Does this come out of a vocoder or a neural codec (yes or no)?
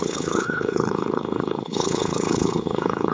yes